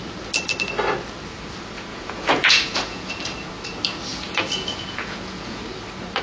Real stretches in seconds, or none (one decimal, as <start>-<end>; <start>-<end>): 0.0-1.9; 3.1-4.1; 5.6-6.2

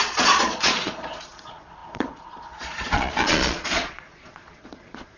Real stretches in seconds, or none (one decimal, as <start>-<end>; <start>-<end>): none

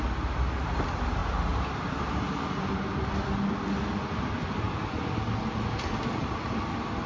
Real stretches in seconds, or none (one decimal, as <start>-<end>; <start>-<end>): 0.0-7.1

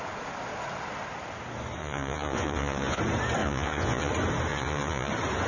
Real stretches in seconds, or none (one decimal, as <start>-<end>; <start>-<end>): 0.0-1.8; 3.0-3.4; 4.1-4.5; 5.1-5.5

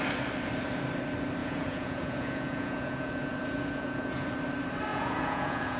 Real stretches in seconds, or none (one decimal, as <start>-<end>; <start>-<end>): 0.0-1.4; 4.3-4.9

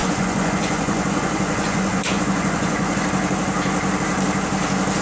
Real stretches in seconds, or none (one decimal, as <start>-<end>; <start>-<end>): 3.0-5.0

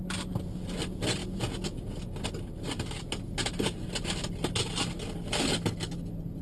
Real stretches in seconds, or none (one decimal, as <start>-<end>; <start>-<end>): 0.0-1.2; 1.9-6.4

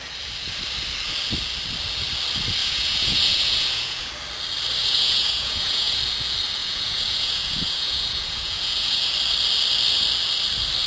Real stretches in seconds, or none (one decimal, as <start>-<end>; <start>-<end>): 0.0-2.6; 4.1-4.8; 6.0-6.6; 9.1-10.9